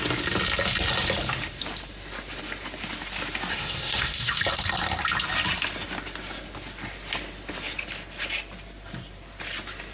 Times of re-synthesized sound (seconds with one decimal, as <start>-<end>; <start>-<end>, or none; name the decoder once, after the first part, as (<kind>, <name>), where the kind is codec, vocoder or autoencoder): 3.5-4.4 (codec, SNAC)